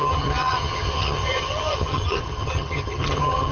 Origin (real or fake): fake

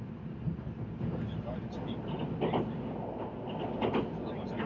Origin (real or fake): real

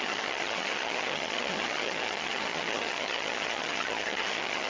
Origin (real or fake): fake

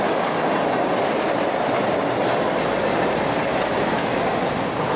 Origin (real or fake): real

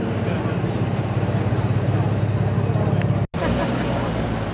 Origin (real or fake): real